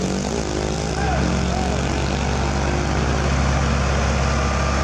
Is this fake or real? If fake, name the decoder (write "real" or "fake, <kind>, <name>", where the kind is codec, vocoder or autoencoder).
real